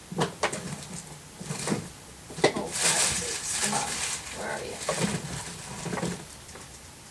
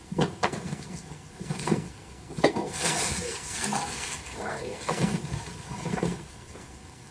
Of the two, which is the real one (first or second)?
first